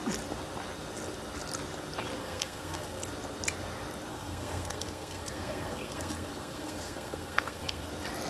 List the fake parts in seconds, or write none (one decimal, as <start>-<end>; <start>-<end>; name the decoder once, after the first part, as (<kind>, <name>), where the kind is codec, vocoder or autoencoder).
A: 2.2-3.0 (codec, SNAC); 4.1-7.9